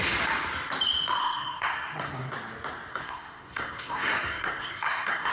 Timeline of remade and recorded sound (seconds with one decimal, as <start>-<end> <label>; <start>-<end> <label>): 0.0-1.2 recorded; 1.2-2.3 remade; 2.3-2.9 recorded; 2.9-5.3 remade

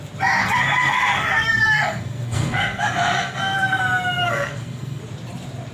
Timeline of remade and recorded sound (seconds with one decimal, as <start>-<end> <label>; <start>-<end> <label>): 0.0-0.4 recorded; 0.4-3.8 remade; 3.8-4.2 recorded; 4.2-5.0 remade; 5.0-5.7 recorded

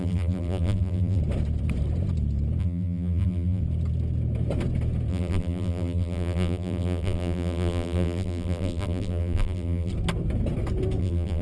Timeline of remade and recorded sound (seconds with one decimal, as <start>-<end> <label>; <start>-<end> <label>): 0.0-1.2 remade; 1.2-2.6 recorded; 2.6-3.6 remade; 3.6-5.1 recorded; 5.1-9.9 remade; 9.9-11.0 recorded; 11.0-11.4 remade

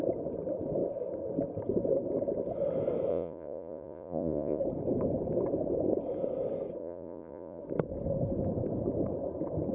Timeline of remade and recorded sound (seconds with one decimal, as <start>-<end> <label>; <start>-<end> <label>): 0.0-3.1 recorded; 3.1-4.6 remade; 4.6-6.8 recorded; 6.8-7.6 remade; 7.6-9.7 recorded

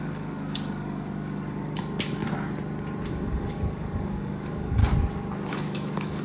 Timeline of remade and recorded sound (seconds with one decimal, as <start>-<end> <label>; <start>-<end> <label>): 0.0-2.2 remade; 2.2-3.1 recorded; 3.1-4.8 remade; 4.8-5.5 recorded; 5.5-6.2 remade

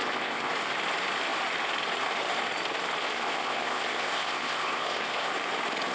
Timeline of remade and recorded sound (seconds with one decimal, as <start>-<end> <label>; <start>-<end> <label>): 0.0-0.5 remade; 0.5-3.0 recorded; 3.0-5.3 remade; 5.3-5.9 recorded